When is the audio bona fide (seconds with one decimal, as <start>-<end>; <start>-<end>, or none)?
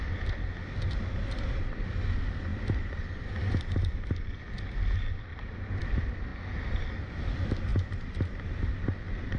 0.0-2.5; 4.4-5.3; 5.8-7.7; 8.7-9.4